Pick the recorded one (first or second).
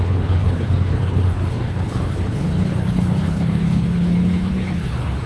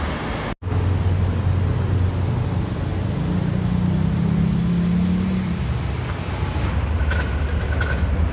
second